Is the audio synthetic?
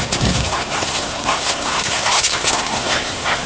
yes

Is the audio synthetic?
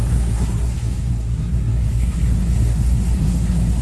yes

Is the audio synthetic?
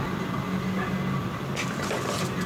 no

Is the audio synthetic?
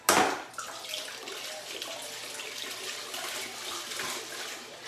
no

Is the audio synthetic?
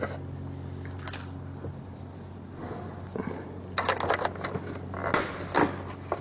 no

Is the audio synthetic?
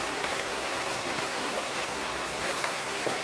yes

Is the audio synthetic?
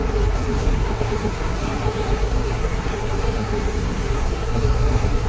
yes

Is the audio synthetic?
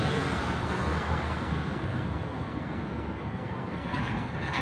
yes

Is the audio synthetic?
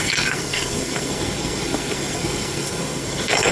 yes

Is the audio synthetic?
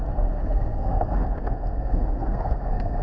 yes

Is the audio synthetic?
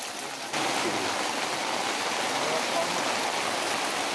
no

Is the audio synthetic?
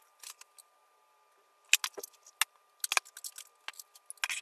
no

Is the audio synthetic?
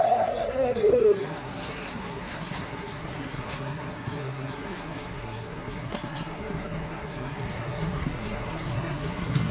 yes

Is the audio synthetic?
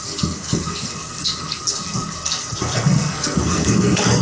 yes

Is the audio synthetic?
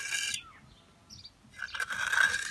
no